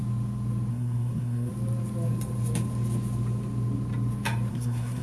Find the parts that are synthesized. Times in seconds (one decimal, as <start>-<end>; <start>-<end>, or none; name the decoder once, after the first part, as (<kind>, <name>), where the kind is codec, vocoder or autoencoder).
0.7-1.5 (codec, SNAC); 4.5-5.0

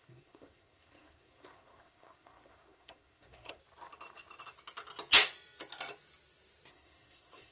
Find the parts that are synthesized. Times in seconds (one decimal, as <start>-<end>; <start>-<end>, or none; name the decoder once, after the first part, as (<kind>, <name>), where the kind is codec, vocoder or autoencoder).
0.0-3.6 (codec, SNAC); 6.7-7.5

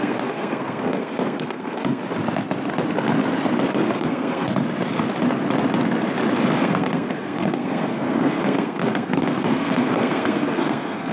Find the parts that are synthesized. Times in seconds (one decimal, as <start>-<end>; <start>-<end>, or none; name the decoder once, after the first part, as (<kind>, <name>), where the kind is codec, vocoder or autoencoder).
0.0-2.0 (codec, SNAC); 3.7-4.5; 6.6-11.1

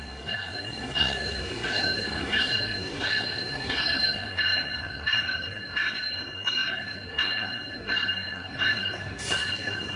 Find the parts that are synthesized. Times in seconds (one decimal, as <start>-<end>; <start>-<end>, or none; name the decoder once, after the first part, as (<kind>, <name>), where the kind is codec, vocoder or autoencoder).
0.0-10.0 (codec, SNAC)

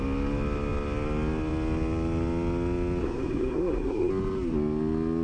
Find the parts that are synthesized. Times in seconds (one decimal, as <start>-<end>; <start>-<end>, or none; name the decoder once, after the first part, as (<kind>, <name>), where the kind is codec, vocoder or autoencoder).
3.0-4.1 (codec, SNAC)